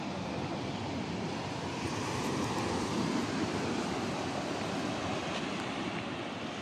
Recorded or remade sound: recorded